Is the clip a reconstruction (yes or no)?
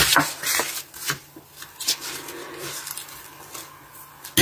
no